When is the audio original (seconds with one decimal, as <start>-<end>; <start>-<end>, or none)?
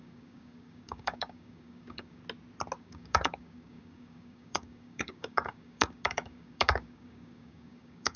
2.2-2.8